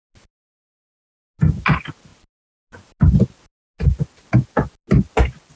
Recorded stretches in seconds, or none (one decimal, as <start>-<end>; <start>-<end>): 0.0-5.6